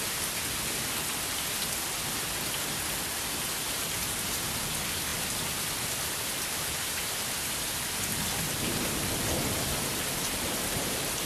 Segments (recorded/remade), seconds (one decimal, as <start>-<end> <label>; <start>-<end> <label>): 0.0-11.3 recorded